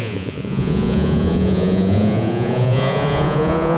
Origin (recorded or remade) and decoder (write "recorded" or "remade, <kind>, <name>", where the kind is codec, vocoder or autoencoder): remade, vocoder, Vocos